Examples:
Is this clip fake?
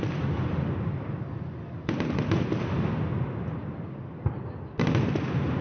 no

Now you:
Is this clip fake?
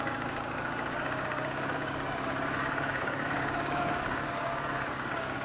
yes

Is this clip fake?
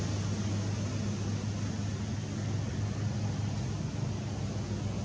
no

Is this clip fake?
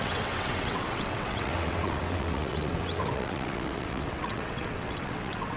yes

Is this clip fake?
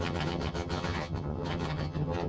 yes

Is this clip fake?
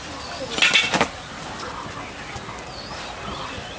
no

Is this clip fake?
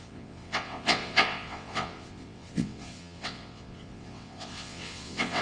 yes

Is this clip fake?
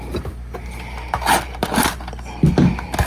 no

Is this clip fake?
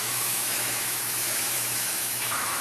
yes